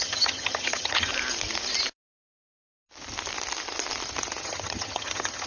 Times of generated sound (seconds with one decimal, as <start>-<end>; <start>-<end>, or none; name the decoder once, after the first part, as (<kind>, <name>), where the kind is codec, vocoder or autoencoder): 0.0-1.1 (vocoder, HiFi-GAN); 4.4-5.5

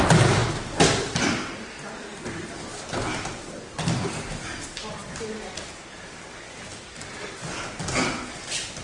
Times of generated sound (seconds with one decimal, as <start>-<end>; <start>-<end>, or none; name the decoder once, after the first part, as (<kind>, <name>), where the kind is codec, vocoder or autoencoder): 0.0-2.1 (vocoder, BigVGAN v2); 3.7-5.0; 6.2-7.4; 8.3-8.8

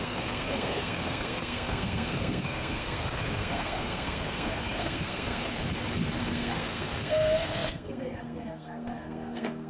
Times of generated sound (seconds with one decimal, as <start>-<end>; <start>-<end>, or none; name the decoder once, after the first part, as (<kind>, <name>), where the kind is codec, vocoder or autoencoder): 0.0-5.6 (codec, SNAC); 6.2-9.7

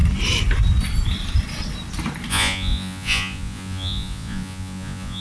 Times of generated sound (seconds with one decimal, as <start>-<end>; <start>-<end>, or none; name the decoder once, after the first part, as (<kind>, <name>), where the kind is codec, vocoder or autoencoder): 2.3-5.2 (vocoder, Vocos)